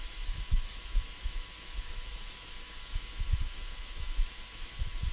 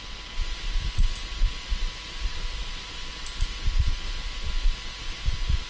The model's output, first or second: first